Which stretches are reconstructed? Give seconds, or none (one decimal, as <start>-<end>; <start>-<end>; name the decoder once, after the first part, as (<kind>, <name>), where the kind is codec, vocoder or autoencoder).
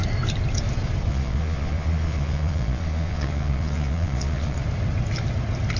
1.1-4.6 (vocoder, Vocos)